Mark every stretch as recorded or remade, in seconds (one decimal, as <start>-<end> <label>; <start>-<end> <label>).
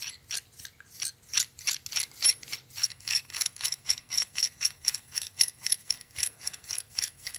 0.0-2.8 recorded; 2.8-7.4 remade